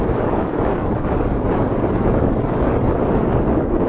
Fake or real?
fake